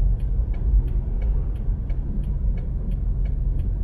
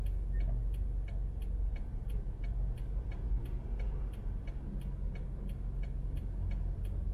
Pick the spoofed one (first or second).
first